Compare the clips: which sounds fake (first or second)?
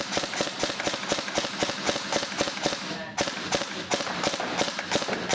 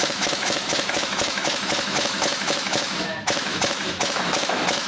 second